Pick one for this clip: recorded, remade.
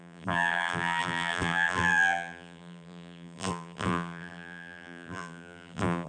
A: remade